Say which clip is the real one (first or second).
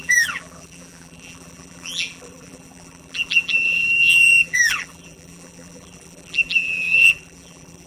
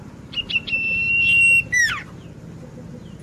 second